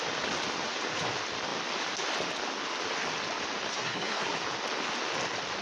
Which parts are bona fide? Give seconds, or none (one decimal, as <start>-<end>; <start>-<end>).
0.0-3.7; 4.3-5.6